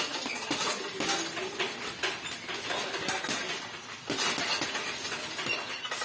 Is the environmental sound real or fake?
real